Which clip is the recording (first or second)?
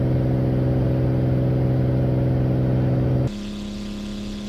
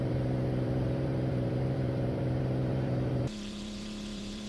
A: first